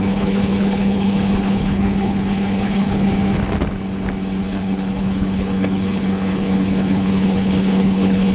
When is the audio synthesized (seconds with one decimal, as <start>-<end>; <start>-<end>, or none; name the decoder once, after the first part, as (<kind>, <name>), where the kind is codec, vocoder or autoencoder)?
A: 0.0-3.1 (codec, HILCodec); 4.4-8.3